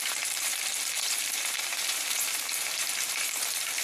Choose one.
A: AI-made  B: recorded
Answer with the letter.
A